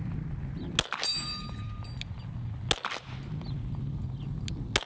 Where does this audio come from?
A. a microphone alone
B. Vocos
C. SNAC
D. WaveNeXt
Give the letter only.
A